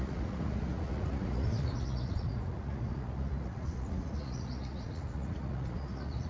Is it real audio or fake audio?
fake